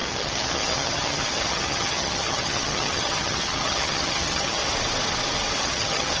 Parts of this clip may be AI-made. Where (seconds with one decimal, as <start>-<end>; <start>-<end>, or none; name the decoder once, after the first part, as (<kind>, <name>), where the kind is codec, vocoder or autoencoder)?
0.0-4.6 (vocoder, HiFi-GAN); 5.6-6.2